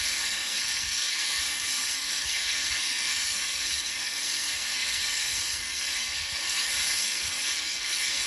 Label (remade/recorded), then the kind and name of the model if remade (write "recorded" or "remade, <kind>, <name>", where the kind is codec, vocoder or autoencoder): remade, codec, SNAC